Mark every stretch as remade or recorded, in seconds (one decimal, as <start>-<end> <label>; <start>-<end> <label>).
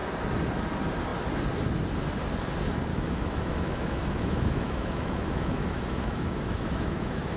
0.0-2.9 recorded; 2.9-7.4 remade